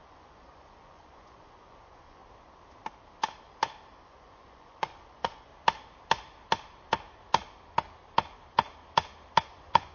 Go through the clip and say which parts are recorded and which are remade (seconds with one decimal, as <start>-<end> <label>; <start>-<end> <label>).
0.0-2.2 remade; 2.2-4.0 recorded; 4.0-5.5 remade; 5.5-9.4 recorded; 9.4-9.9 remade